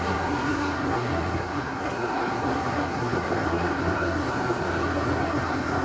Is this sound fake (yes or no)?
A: yes